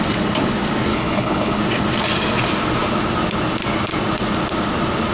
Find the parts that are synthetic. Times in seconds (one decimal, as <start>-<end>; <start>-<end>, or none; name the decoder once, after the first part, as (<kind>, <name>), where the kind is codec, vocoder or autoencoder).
0.9-1.6 (codec, HILCodec)